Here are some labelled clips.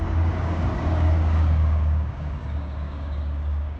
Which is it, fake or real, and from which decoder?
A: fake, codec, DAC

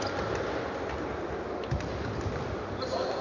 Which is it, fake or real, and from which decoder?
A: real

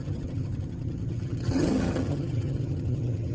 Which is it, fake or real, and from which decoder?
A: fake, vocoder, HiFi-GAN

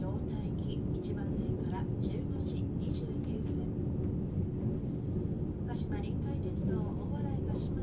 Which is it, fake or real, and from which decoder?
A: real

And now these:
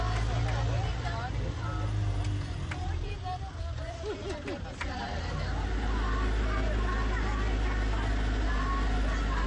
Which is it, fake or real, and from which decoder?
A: real